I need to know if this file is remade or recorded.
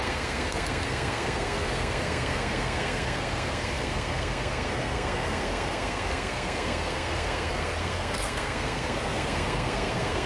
remade